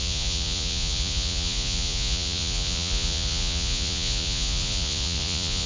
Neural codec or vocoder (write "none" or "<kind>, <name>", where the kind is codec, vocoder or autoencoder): vocoder, Vocos